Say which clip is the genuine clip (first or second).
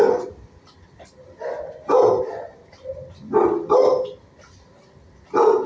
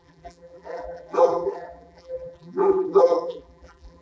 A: first